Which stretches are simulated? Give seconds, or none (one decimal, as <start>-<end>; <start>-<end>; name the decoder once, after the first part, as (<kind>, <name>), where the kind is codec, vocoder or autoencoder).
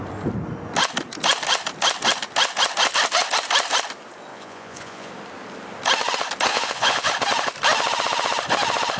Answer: 4.3-5.1 (vocoder, Vocos); 6.5-7.1